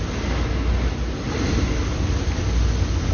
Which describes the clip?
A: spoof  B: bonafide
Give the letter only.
B